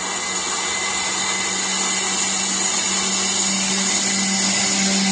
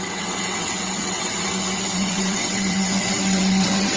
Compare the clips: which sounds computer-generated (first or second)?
second